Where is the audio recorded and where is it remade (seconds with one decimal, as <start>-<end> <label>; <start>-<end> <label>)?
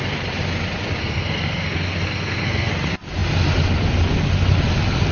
0.0-1.0 recorded; 1.0-2.7 remade; 2.7-5.1 recorded